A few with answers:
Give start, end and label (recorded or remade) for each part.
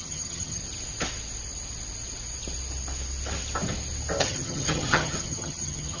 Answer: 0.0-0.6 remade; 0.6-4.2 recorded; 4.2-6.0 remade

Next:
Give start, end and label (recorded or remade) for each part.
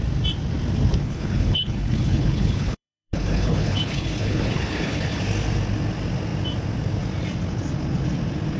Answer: 0.0-1.0 recorded; 1.0-5.2 remade; 5.2-8.6 recorded